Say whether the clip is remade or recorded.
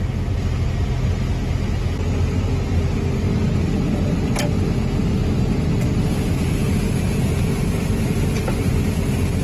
recorded